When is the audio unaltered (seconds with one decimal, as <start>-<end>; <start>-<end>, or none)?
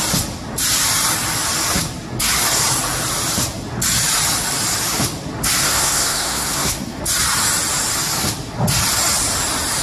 0.0-5.6; 7.0-9.8